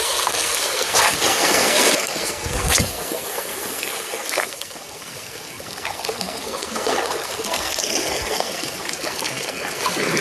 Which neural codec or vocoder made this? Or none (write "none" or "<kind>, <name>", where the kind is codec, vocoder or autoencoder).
codec, SNAC